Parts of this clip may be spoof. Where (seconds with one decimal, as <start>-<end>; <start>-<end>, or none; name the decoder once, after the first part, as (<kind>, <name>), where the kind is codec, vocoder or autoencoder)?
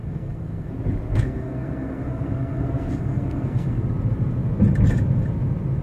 0.0-0.7 (codec, SNAC); 1.1-3.8